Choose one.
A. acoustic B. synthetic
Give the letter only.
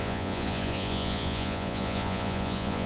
B